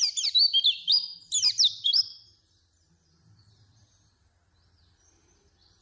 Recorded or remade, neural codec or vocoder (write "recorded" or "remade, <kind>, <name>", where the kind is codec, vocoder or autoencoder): recorded